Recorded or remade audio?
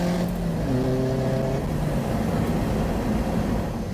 recorded